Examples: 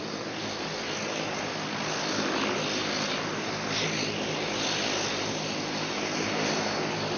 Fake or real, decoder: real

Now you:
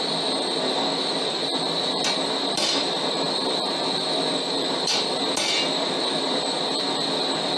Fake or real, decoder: real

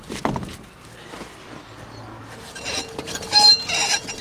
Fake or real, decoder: real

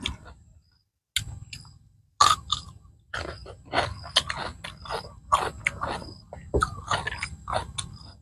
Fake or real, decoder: real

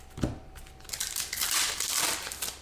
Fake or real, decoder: real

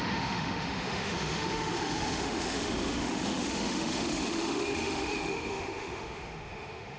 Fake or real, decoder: fake, autoencoder, DAC-VAE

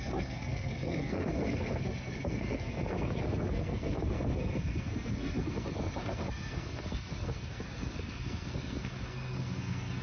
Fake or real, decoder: fake, codec, SNAC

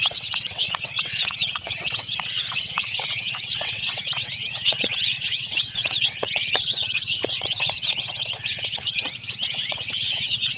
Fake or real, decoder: fake, vocoder, WaveNeXt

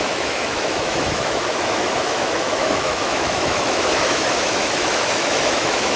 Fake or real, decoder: fake, autoencoder, DAC-VAE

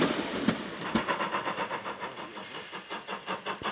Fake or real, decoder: real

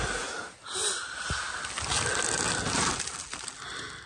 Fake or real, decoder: real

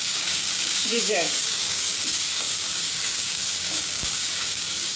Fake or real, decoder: fake, codec, DAC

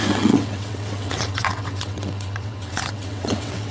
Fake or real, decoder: fake, vocoder, WaveNeXt